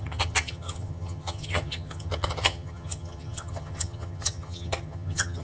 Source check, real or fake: fake